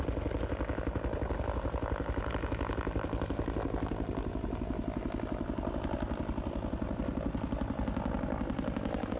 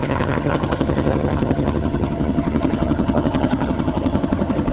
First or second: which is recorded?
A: first